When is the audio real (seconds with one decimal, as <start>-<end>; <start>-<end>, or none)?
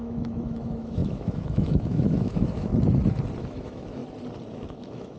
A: 2.7-3.4; 4.0-4.5